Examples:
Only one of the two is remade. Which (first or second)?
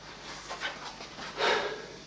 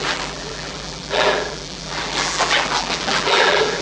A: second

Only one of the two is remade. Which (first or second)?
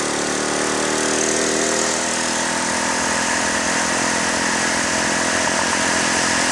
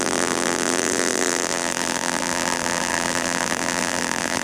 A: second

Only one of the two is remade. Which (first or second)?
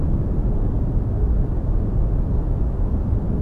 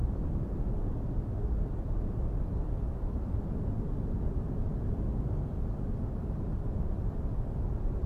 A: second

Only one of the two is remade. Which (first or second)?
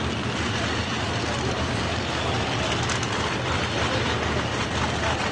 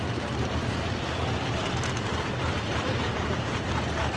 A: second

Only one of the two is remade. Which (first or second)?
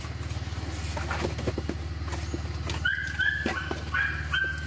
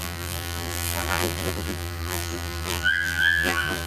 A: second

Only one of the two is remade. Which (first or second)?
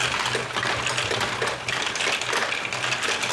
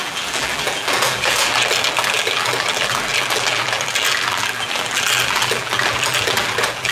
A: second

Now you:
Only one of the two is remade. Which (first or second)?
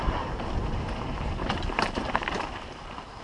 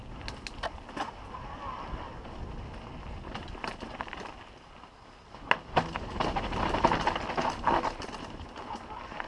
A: first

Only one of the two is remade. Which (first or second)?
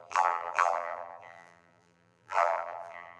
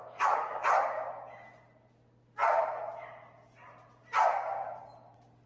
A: first